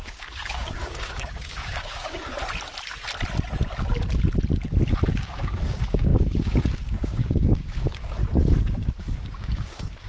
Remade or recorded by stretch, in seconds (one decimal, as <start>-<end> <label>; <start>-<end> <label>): 0.0-2.3 remade; 2.3-5.1 recorded; 5.1-8.2 remade; 8.2-9.0 recorded; 9.0-10.1 remade